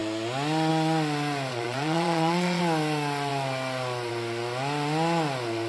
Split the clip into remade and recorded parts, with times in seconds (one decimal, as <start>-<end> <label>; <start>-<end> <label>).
0.0-1.5 recorded; 1.5-2.6 remade; 2.6-5.7 recorded